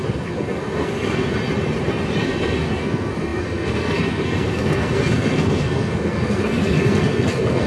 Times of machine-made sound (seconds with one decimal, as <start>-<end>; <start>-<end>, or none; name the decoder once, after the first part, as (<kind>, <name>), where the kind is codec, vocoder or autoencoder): 0.0-1.3 (codec, SNAC); 2.2-7.7